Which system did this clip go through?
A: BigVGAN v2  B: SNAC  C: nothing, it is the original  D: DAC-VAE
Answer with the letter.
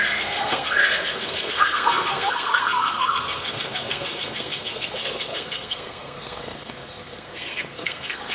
B